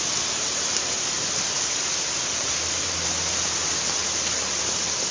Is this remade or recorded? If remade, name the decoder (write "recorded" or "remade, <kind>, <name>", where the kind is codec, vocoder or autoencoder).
recorded